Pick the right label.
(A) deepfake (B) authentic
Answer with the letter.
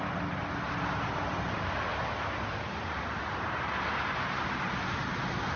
B